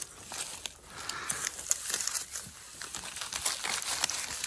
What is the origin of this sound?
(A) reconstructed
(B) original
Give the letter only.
B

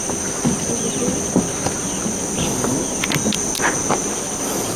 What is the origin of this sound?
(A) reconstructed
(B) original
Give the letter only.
B